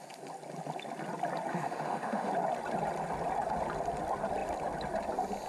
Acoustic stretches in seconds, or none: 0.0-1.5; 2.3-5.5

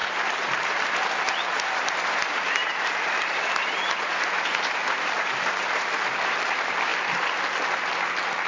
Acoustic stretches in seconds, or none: 0.0-1.7; 3.8-5.3; 6.9-8.5

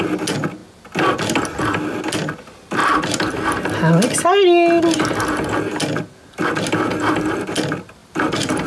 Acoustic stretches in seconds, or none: 0.0-8.0

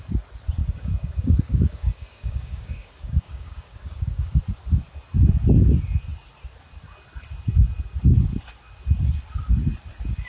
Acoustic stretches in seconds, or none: 0.0-0.6; 4.4-10.3